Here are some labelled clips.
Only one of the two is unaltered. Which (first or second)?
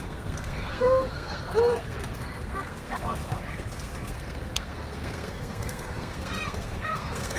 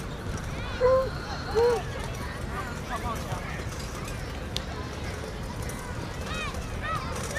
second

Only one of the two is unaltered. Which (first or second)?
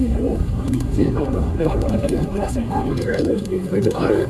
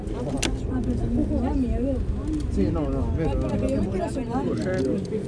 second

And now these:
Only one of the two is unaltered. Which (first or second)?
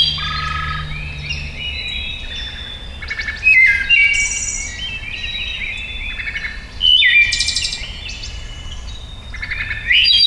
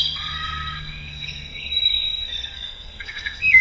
first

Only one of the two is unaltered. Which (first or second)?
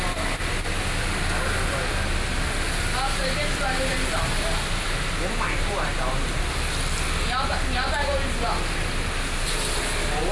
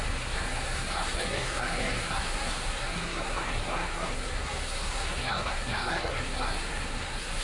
first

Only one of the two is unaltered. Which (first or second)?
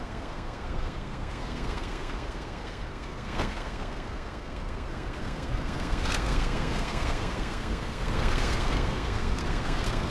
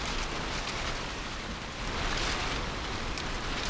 second